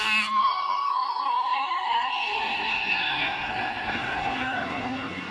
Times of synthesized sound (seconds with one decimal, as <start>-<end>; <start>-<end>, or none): 0.0-5.3